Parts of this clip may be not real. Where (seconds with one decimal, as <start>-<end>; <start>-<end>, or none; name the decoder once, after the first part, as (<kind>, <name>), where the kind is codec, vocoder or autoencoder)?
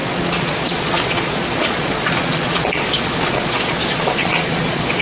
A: 0.0-5.0 (vocoder, Vocos)